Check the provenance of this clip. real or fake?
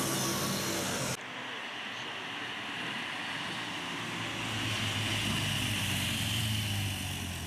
real